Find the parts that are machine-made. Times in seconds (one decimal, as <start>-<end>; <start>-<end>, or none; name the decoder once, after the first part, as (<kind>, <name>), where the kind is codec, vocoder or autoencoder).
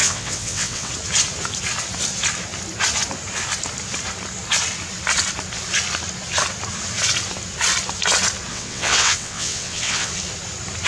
0.0-0.9 (vocoder, WaveNeXt); 8.5-10.1